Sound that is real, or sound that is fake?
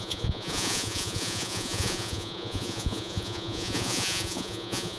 fake